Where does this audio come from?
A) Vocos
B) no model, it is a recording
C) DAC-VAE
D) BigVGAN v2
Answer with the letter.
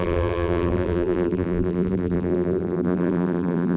D